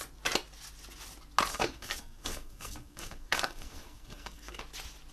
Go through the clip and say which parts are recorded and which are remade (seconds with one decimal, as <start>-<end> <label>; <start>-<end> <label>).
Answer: 0.0-1.5 recorded; 1.5-4.6 remade; 4.6-5.1 recorded